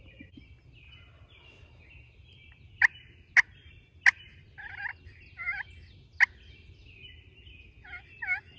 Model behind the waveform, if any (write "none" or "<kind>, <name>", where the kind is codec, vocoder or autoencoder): none